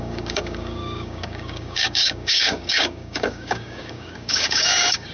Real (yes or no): no